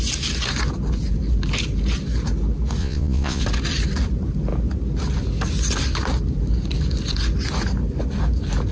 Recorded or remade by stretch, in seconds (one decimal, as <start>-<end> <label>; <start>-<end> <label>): 0.0-2.8 recorded; 2.8-3.4 remade; 3.4-8.7 recorded